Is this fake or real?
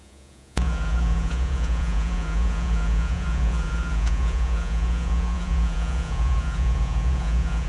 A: fake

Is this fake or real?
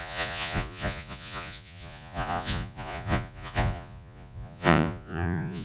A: fake